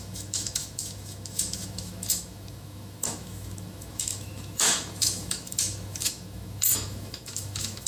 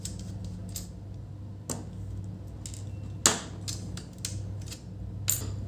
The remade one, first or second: first